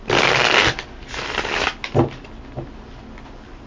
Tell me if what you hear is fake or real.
real